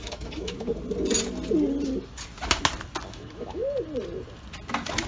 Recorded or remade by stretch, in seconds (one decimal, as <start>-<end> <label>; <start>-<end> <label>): 0.0-0.7 remade; 0.7-3.1 recorded; 3.1-3.6 remade; 3.6-5.1 recorded